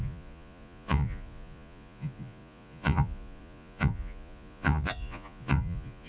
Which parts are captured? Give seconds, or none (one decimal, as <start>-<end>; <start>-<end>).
none